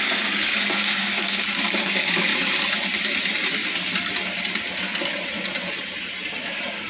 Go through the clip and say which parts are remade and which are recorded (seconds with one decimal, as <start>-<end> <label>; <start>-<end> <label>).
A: 0.0-2.3 remade; 2.3-6.4 recorded; 6.4-6.9 remade